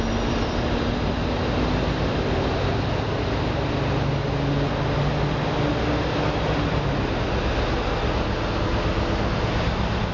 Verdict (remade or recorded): recorded